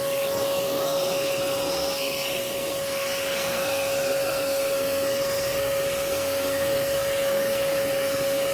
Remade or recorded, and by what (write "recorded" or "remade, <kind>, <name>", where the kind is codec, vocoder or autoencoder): remade, codec, SNAC